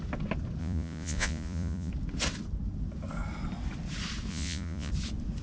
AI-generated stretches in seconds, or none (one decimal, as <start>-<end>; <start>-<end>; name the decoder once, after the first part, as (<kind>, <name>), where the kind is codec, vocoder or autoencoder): 0.6-1.9 (vocoder, Vocos); 4.3-4.9